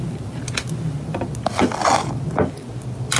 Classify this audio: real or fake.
real